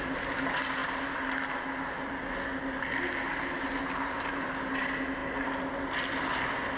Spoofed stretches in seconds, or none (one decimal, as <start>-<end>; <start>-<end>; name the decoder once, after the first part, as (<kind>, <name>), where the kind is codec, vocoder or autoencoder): none